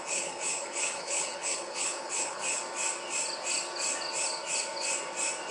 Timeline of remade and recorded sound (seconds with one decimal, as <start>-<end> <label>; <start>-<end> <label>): 0.0-2.6 remade; 2.6-5.5 recorded